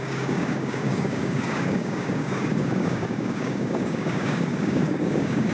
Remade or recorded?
remade